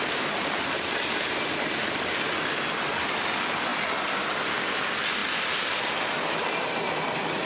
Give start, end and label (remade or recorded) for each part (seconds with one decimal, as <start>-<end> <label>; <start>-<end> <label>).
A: 0.0-7.5 recorded